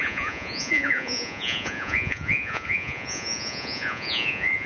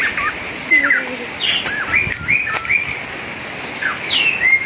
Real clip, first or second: second